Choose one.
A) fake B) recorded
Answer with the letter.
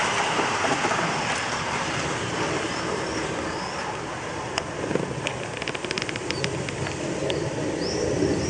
B